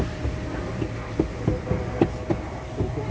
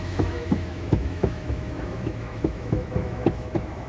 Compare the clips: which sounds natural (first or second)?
first